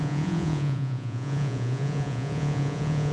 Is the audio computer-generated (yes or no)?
yes